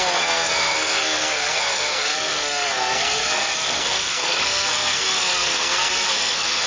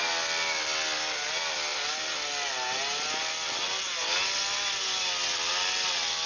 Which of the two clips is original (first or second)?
second